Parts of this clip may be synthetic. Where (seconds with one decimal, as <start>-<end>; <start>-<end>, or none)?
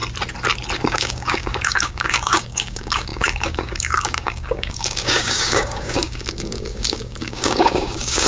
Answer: 0.8-8.3